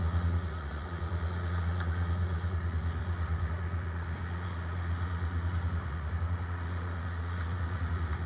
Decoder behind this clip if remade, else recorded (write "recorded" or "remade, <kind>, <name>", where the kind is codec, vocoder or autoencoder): remade, vocoder, Vocos